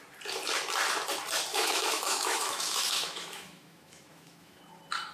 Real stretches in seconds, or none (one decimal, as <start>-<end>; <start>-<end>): 0.0-1.5; 4.6-5.1